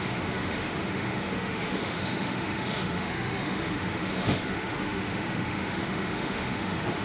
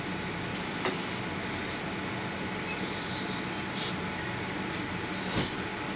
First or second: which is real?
second